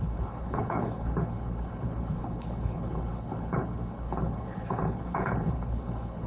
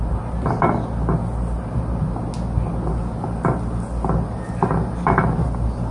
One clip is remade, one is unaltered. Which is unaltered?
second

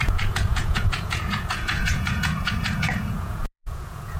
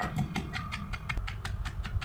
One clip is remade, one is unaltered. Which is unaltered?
second